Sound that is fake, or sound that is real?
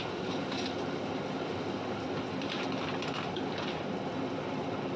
real